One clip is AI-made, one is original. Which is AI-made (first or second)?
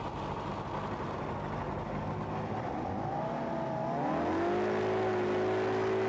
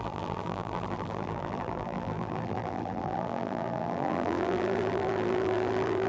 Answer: second